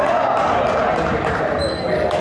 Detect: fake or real real